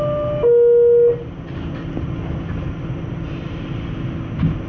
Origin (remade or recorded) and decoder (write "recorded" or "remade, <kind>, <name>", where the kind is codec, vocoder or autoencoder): recorded